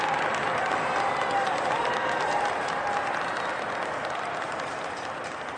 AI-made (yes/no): yes